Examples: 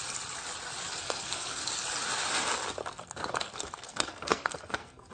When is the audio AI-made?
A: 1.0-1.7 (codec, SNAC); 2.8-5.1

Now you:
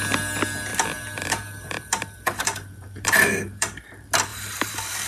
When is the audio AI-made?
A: 0.7-3.8 (vocoder, BigVGAN v2); 4.3-5.1

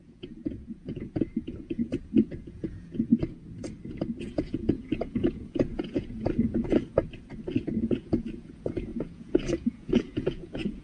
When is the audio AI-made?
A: 0.0-3.1 (vocoder, Vocos); 4.2-7.0; 7.8-10.8

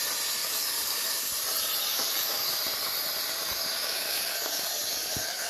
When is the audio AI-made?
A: 0.4-1.3 (codec, DAC); 1.9-2.5; 3.4-5.5

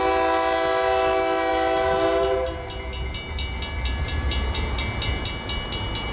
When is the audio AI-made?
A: none

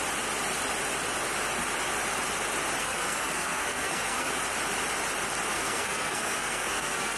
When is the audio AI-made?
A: 2.8-4.3 (codec, SNAC); 5.5-7.2

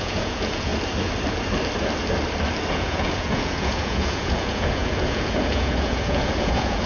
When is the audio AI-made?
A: 0.0-0.7 (vocoder, Vocos); 2.7-6.9

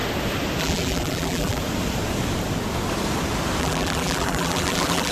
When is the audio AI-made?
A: 0.6-1.6 (vocoder, BigVGAN v2); 3.6-5.1